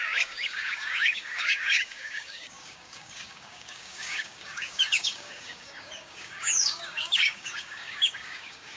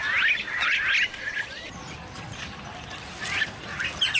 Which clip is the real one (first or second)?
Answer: second